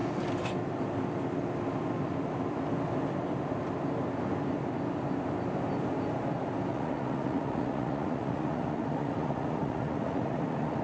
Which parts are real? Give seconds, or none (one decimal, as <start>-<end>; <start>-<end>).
0.0-6.7